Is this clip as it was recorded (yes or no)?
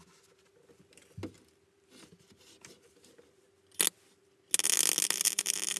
yes